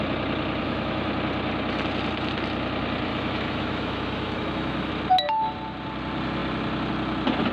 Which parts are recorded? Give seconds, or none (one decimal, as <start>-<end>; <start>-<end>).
0.0-0.6; 1.1-3.1; 4.9-7.5